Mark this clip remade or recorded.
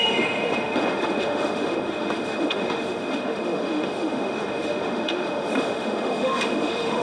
remade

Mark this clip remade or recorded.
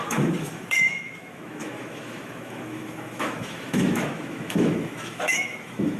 remade